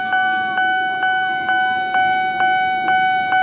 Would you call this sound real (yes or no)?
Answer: yes